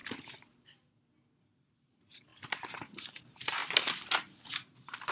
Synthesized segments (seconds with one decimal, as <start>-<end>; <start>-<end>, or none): 1.4-3.6; 4.2-5.1